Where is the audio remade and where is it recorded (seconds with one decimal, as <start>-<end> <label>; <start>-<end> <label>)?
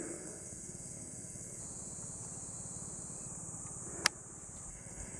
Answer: 0.0-1.6 remade; 1.6-4.7 recorded; 4.7-5.2 remade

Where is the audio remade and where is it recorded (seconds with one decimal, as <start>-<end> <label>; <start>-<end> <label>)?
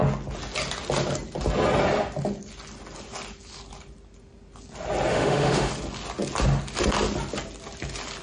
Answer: 0.0-5.1 recorded; 5.1-5.7 remade; 5.7-8.2 recorded